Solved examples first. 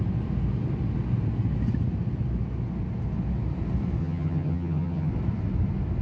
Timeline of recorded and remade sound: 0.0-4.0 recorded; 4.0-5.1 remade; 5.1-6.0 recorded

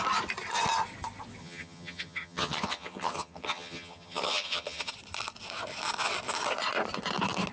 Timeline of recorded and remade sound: 0.0-1.4 recorded; 1.4-4.9 remade; 4.9-7.5 recorded